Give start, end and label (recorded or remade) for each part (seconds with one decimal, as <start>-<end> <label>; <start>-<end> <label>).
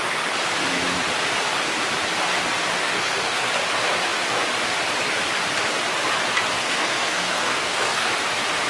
0.0-2.8 recorded; 2.8-3.5 remade; 3.5-6.6 recorded; 6.6-8.1 remade; 8.1-8.7 recorded